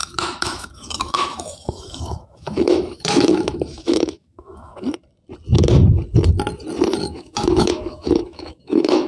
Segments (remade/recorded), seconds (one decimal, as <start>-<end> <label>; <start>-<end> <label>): 0.0-5.0 remade; 5.0-7.0 recorded; 7.0-9.1 remade